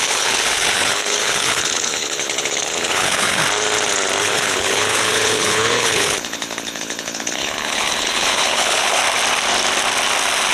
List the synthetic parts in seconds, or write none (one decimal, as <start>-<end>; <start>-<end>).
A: 0.0-3.4; 4.2-9.0